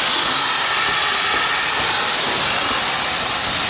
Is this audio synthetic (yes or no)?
no